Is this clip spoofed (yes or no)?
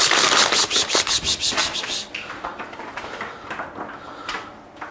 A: no